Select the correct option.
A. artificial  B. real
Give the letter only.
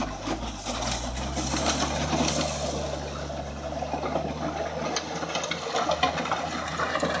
B